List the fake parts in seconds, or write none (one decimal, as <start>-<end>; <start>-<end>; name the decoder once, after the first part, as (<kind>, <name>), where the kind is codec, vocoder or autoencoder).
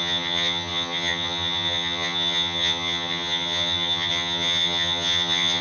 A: 0.0-5.6 (vocoder, HiFi-GAN)